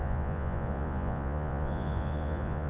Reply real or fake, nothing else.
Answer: fake